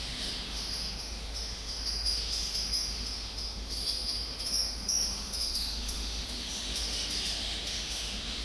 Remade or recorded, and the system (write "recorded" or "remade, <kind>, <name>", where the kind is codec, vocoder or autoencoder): remade, autoencoder, DAC-VAE